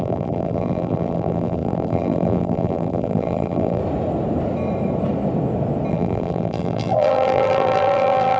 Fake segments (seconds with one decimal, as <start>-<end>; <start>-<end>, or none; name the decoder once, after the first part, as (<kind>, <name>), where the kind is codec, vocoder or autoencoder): 0.0-3.8 (vocoder, BigVGAN v2); 5.9-8.4